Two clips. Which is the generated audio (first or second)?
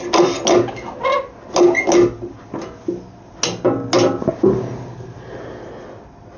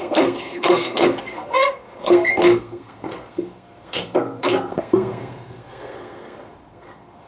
second